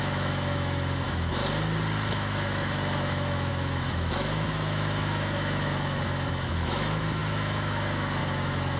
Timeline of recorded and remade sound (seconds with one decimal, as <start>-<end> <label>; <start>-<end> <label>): 0.0-1.4 remade; 1.4-2.1 recorded; 2.1-8.8 remade